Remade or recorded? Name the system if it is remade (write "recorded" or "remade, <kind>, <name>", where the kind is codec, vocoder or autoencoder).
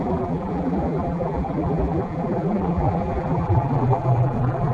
remade, vocoder, BigVGAN v2